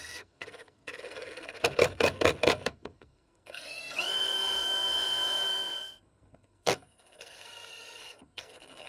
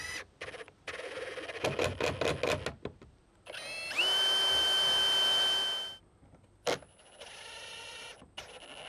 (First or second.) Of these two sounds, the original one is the second